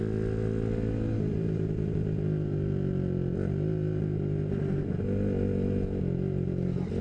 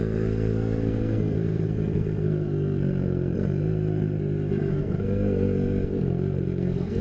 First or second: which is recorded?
first